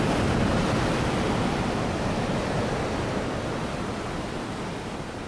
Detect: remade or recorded recorded